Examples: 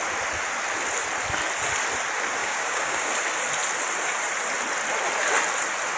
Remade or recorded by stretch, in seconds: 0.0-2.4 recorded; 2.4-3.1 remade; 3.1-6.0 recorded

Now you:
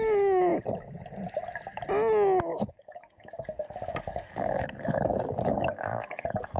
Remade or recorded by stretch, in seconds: 0.0-2.5 recorded; 2.5-6.6 remade

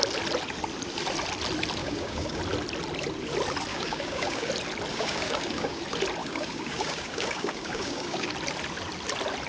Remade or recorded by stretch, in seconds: 0.0-1.8 recorded; 1.8-2.4 remade; 2.4-3.7 recorded; 3.7-4.5 remade; 4.5-4.9 recorded; 4.9-5.8 remade; 5.8-6.2 recorded; 6.2-8.3 remade; 8.3-9.5 recorded

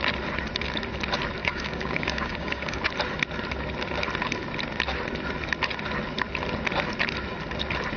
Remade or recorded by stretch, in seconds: 0.0-1.4 recorded; 1.4-2.8 remade; 2.8-8.0 recorded